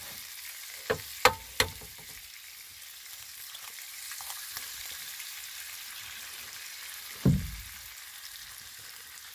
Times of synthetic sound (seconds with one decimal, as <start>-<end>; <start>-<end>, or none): 2.7-7.3